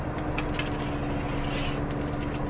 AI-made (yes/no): no